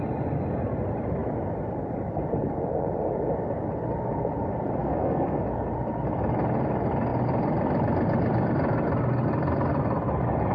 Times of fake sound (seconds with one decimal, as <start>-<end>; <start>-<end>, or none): 4.8-5.4